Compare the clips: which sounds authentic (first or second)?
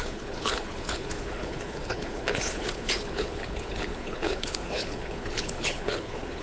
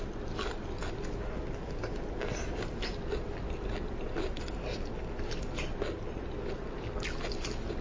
second